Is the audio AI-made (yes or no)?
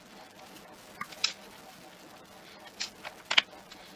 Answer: no